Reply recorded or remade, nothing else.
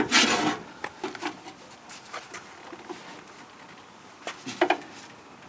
recorded